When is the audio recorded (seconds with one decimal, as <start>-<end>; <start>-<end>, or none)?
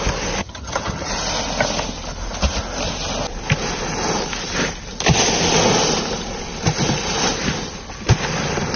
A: 0.0-0.4; 1.1-8.8